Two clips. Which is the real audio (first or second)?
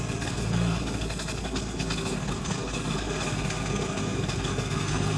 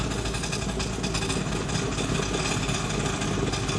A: second